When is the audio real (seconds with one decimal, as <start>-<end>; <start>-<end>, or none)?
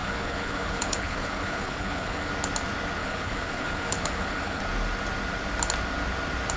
2.3-3.0; 4.6-6.6